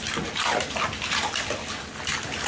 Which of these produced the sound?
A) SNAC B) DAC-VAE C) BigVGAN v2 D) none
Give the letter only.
D